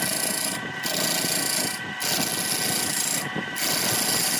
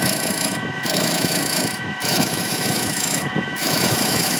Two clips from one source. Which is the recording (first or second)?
first